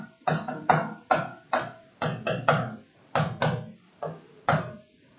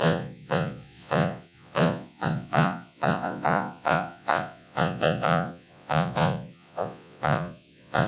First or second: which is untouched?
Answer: first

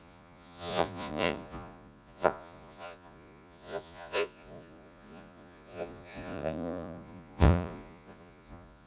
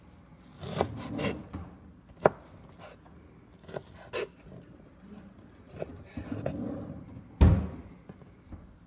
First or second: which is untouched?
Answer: second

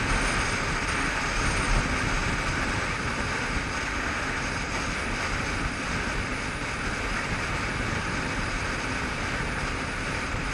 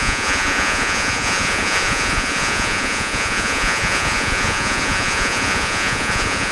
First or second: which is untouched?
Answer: first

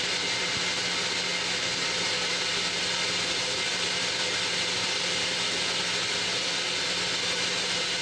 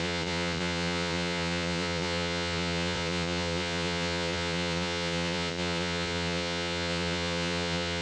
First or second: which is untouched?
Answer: first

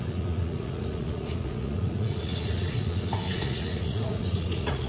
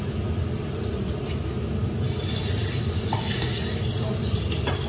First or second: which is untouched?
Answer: second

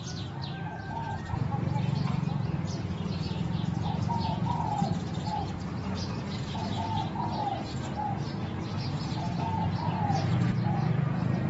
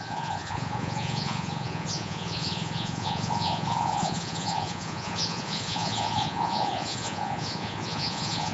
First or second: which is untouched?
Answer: first